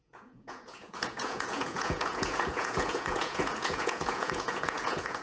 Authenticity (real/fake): fake